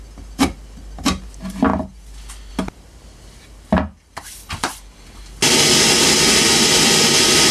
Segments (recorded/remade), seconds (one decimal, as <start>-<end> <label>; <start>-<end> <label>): 0.0-7.5 recorded